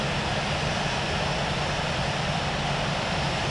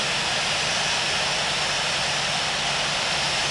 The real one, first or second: second